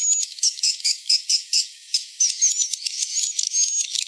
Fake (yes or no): yes